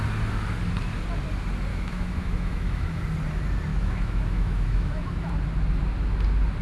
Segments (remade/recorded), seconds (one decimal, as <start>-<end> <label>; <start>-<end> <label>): 0.0-1.7 recorded; 1.7-3.0 remade; 3.0-3.7 recorded; 3.7-5.3 remade; 5.3-6.6 recorded